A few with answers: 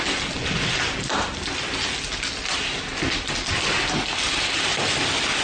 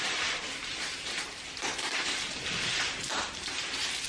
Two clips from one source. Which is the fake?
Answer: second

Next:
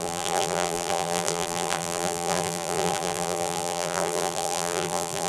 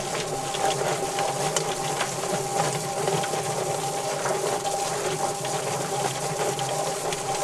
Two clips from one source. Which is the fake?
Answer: first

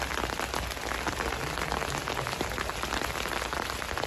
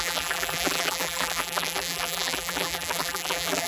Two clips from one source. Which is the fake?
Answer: second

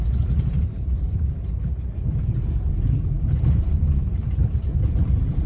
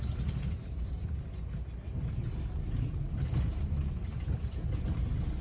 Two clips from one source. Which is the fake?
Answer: first